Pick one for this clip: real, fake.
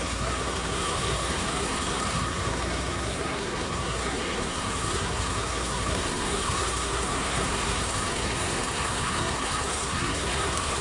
fake